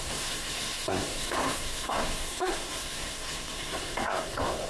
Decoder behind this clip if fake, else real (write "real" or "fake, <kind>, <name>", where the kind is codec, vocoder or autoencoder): fake, codec, SNAC